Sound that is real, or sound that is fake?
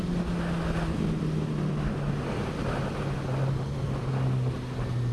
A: real